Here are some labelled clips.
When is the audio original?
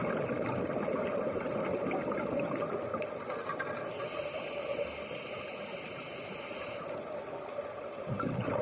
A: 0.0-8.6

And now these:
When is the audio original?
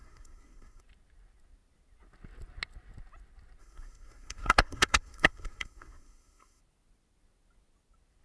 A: 0.8-3.6; 6.6-8.2